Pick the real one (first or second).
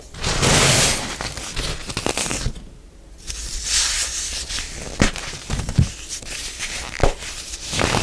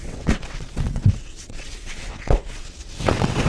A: first